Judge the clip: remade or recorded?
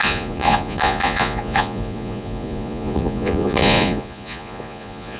remade